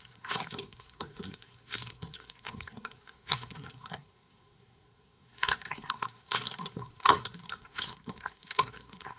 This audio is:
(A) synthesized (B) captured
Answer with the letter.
A